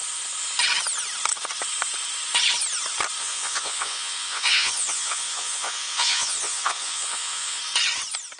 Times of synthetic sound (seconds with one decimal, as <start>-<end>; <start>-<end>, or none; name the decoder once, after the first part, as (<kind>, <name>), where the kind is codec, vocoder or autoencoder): 3.2-7.6 (vocoder, Vocos)